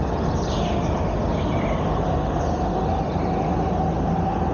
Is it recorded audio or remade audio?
recorded